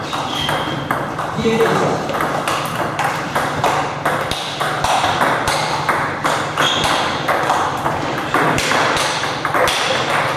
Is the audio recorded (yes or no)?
no